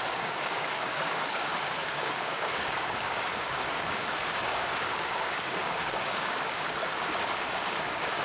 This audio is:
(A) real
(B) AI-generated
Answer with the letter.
B